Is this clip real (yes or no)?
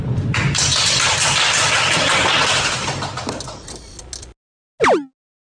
yes